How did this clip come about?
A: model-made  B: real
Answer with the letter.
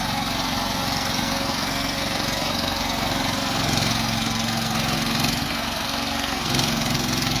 A